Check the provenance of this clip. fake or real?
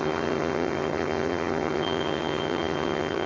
fake